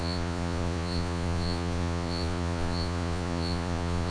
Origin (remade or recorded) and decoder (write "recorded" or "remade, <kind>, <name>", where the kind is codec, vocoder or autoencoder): remade, vocoder, Vocos